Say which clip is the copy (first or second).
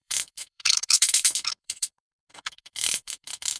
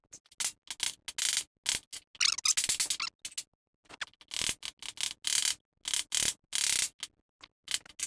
first